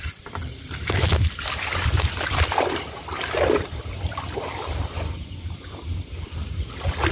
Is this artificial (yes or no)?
no